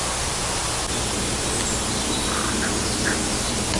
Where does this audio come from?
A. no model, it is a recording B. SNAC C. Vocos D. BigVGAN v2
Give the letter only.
A